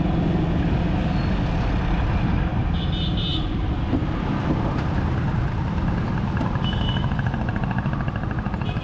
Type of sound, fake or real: real